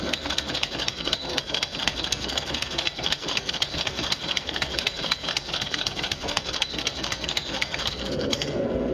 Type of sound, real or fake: fake